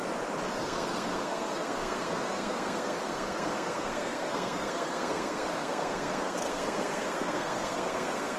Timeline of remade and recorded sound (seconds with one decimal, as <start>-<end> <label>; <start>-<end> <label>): 0.0-0.6 recorded; 0.6-8.4 remade